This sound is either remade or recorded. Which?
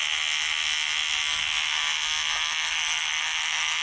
recorded